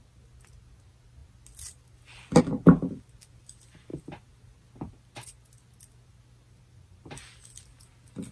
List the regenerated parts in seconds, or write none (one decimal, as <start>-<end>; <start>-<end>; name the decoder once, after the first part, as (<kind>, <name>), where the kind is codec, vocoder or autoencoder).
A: none